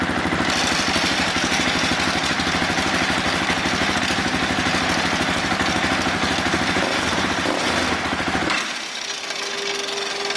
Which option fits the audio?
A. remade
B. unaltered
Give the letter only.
B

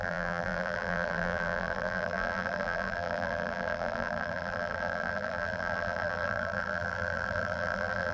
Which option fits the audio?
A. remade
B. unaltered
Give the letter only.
A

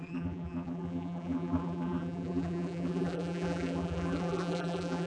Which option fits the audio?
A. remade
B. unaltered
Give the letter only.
A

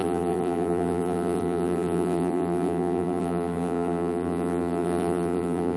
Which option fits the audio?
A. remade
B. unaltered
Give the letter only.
A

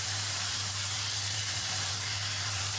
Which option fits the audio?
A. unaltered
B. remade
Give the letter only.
B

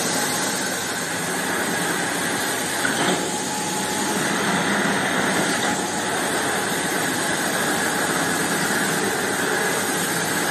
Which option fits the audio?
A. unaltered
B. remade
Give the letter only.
A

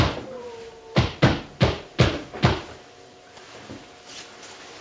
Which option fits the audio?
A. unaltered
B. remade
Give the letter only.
A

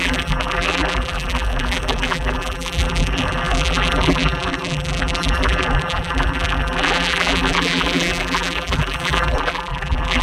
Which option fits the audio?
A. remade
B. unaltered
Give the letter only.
A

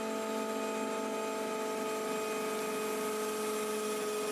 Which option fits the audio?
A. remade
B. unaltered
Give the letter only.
B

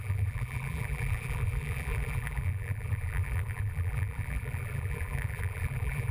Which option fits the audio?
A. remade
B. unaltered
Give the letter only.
A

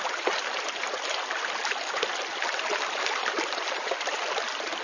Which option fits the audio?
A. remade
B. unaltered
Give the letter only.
B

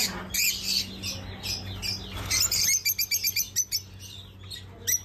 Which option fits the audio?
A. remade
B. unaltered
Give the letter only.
B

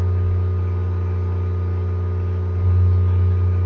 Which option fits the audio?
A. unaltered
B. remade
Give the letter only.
A